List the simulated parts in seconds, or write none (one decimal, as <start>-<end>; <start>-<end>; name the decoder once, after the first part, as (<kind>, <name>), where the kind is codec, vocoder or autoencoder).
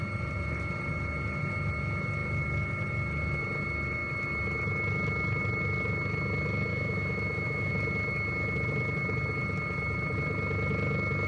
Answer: 6.7-7.7 (autoencoder, DAC-VAE)